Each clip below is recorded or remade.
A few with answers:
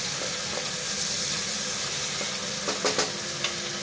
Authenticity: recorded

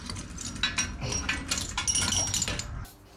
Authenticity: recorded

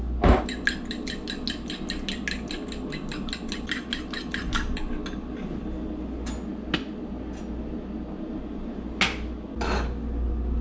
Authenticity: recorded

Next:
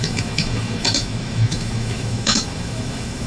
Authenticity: remade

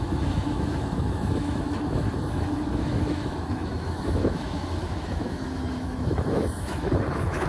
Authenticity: remade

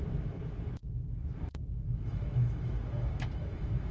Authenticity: remade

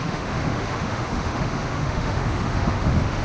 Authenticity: remade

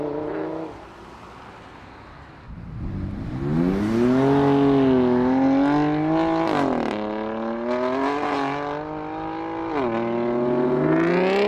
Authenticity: recorded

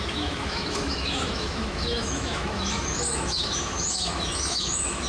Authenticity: remade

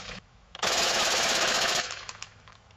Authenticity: remade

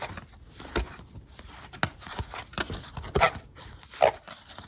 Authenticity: recorded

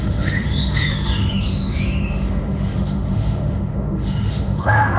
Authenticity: remade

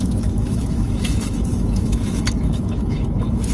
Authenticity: remade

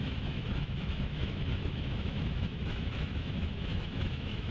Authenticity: remade